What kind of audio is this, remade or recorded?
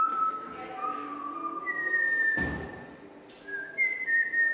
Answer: recorded